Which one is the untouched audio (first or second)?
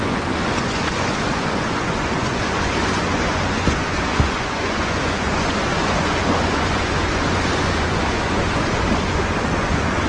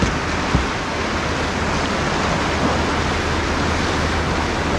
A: second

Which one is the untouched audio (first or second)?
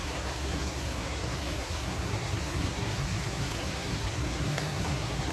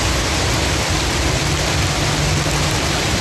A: second